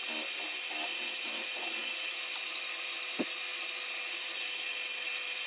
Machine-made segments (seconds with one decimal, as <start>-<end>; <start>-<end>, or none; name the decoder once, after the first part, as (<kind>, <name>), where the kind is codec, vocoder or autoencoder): 0.9-2.2 (vocoder, Vocos)